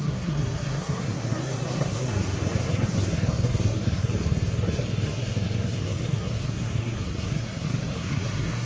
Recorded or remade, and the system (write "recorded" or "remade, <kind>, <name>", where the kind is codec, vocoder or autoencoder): remade, codec, SNAC